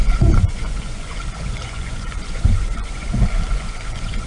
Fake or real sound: fake